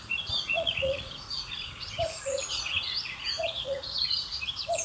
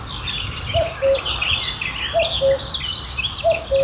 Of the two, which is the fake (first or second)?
first